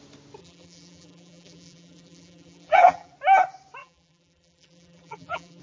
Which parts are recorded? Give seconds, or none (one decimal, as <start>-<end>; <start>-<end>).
0.0-0.4; 3.1-3.8